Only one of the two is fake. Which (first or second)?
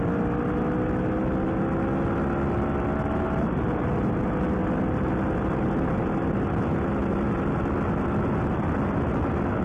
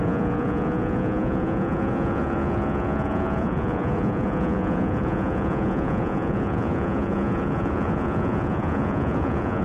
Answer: second